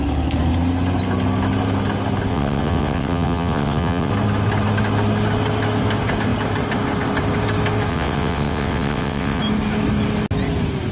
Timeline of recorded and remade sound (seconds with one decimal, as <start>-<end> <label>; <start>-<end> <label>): 0.0-2.3 recorded; 2.3-4.1 remade; 4.1-7.9 recorded; 7.9-9.4 remade; 9.4-10.9 recorded